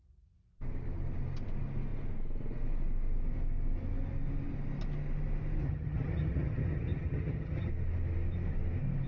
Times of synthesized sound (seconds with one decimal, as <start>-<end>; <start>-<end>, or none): 5.6-7.7